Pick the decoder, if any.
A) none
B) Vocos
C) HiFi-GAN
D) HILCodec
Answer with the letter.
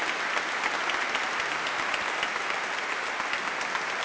A